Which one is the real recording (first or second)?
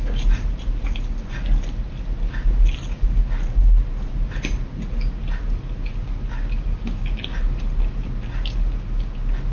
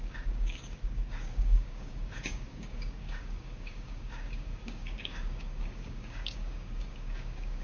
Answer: first